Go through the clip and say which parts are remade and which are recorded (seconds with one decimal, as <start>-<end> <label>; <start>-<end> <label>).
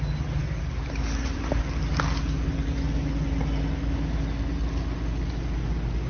0.0-0.4 recorded; 0.4-1.5 remade; 1.5-6.1 recorded